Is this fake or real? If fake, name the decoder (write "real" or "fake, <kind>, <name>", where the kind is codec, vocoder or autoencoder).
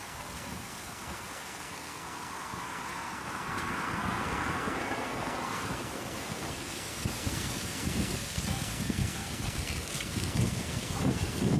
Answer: fake, codec, SNAC